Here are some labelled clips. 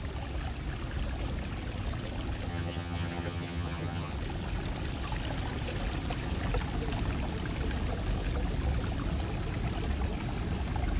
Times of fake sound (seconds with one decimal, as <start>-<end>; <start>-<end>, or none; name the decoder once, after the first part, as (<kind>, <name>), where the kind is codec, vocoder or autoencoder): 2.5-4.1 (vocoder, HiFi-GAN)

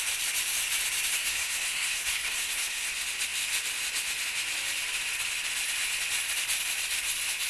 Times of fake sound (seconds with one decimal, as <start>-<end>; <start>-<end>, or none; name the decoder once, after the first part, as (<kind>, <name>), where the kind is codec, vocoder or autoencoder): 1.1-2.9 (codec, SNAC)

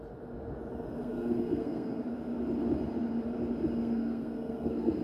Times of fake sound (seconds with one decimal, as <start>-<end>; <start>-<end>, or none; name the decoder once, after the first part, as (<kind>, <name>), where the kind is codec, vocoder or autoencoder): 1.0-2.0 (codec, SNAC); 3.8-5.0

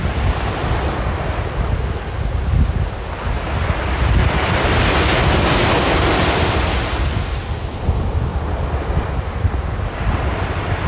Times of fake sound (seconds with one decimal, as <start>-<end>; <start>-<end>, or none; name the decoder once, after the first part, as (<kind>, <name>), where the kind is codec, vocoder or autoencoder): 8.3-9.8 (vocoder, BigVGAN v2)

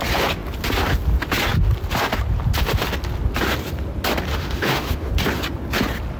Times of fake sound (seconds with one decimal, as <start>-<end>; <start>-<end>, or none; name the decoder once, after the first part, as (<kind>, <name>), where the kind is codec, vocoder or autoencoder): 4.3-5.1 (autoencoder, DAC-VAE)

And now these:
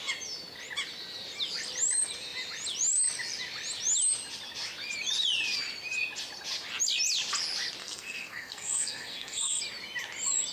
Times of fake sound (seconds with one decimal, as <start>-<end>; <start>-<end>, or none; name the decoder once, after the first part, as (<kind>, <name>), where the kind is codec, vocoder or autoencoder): 7.8-9.6 (codec, SNAC)

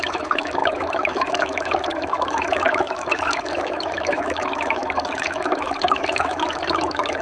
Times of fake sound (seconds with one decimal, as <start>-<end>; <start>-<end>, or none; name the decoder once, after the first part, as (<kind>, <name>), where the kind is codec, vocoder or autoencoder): 0.0-7.2 (autoencoder, DAC-VAE)